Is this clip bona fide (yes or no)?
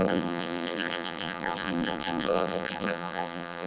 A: no